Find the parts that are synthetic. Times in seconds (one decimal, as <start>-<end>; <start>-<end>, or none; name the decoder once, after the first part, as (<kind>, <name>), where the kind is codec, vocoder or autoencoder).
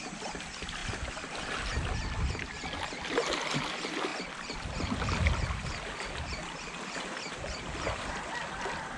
none